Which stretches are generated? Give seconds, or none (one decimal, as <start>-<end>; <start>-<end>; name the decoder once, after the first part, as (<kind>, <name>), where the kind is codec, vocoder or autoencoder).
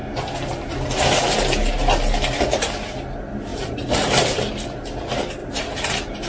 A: 3.5-4.5 (vocoder, BigVGAN v2); 5.4-6.3